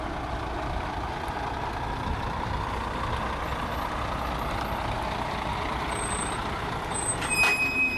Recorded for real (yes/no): yes